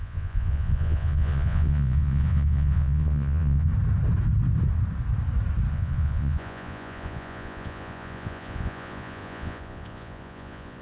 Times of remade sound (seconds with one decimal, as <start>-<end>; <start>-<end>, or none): 0.0-3.7; 5.7-10.8